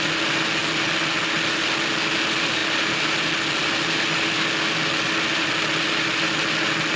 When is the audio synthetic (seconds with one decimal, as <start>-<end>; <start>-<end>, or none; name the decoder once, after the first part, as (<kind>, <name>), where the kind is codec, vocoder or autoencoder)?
none